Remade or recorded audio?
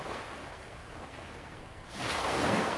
remade